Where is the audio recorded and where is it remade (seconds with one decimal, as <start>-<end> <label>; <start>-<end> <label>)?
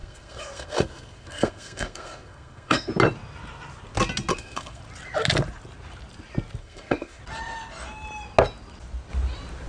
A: 0.0-2.9 remade; 2.9-4.3 recorded; 4.3-4.8 remade; 4.8-6.6 recorded; 6.6-7.2 remade; 7.2-9.7 recorded